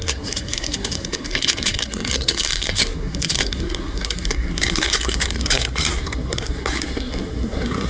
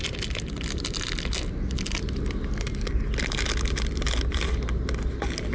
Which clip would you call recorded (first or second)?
second